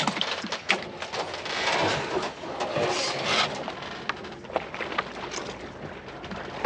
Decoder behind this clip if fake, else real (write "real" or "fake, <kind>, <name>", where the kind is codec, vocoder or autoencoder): real